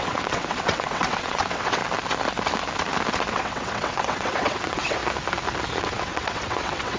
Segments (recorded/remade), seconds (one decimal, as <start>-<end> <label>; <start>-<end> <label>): 0.0-1.8 remade; 1.8-3.3 recorded; 3.3-5.0 remade; 5.0-5.8 recorded; 5.8-7.0 remade